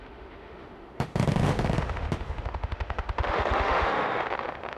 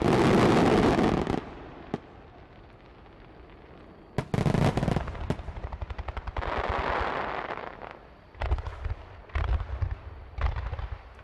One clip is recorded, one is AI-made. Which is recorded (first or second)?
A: second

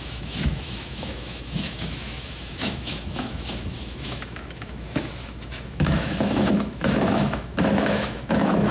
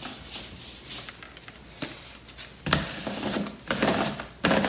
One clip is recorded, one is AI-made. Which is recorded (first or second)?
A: second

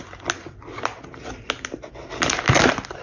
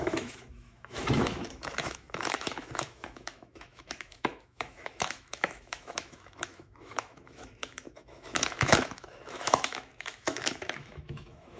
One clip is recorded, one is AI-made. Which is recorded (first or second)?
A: first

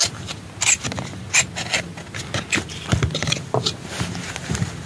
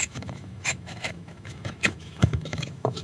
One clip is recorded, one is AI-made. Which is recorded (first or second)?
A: first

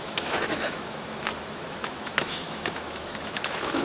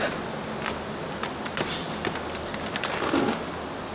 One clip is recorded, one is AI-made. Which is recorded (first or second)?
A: second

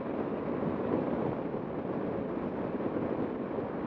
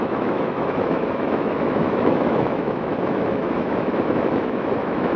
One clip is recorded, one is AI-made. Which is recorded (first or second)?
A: first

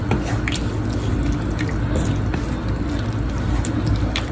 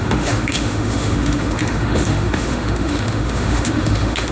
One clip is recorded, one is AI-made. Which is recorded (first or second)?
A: first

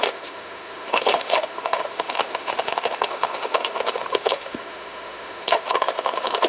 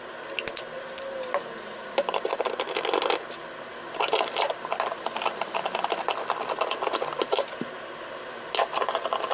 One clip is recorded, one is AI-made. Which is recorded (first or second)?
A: second